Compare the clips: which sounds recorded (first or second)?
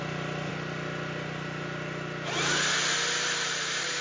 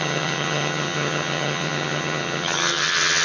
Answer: first